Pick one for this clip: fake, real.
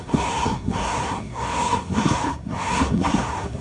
fake